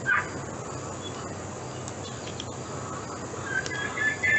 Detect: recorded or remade recorded